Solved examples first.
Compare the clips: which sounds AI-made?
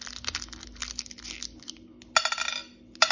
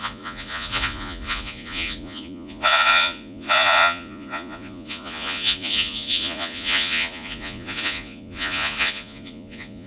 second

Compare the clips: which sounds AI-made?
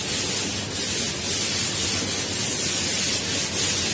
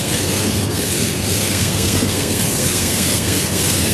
second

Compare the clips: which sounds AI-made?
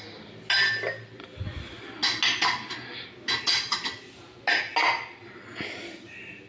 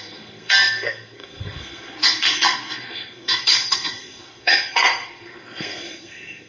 second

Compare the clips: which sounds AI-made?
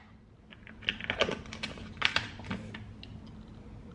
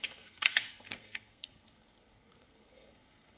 second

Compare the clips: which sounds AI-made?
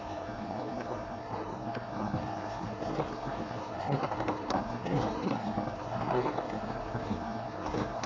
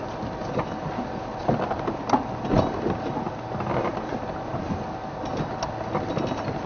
first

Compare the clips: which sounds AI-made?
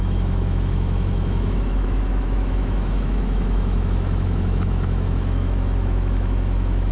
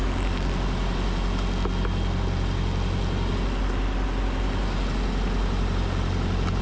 first